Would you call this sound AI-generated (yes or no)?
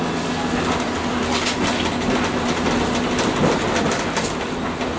no